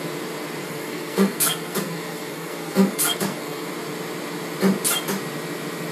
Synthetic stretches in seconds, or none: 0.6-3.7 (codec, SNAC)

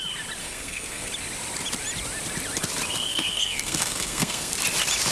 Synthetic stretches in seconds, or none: 0.4-1.1 (codec, SNAC); 3.1-4.5

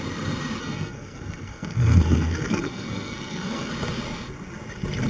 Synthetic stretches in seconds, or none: 0.6-3.7 (codec, SNAC)

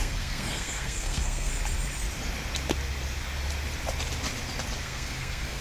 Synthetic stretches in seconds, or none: 0.0-1.5 (codec, SNAC); 4.8-5.6

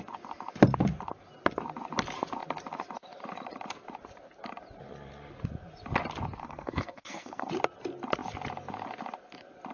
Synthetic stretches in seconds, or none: 6.4-7.5 (codec, SNAC)